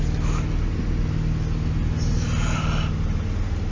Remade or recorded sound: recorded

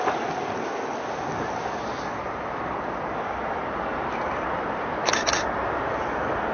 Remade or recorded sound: recorded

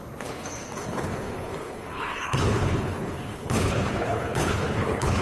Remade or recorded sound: remade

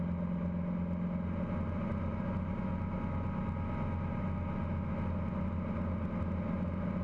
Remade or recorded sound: recorded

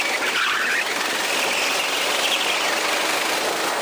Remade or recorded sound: recorded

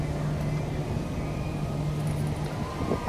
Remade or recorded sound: recorded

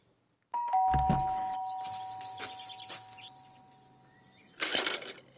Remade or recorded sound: recorded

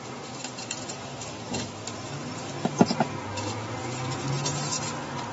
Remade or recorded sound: recorded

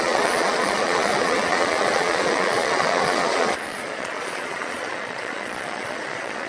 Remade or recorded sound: remade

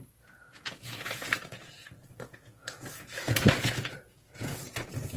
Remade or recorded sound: remade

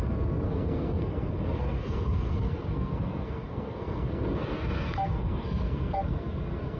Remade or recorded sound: remade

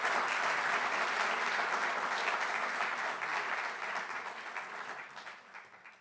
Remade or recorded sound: recorded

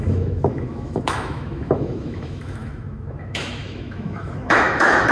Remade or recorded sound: remade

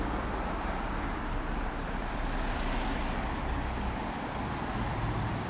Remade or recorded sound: remade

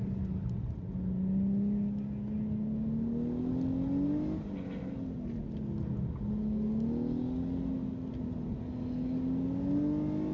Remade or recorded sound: recorded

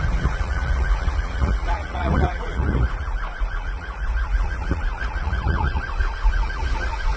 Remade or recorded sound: remade